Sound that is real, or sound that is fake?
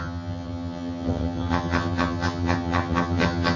fake